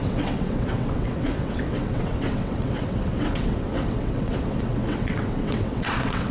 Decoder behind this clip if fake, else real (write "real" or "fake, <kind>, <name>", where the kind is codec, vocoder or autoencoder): fake, vocoder, WaveNeXt